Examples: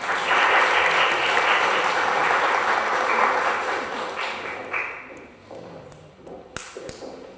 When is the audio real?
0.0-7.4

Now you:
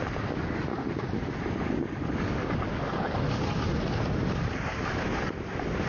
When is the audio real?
0.0-5.9

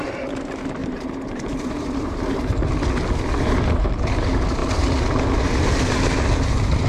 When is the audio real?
0.0-0.8; 2.2-6.9